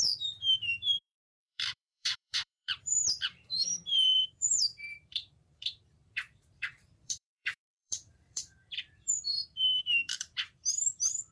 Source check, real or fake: fake